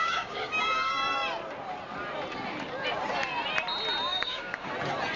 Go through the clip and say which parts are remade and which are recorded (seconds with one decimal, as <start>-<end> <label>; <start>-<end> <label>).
0.0-0.9 remade; 0.9-4.1 recorded; 4.1-4.7 remade; 4.7-5.2 recorded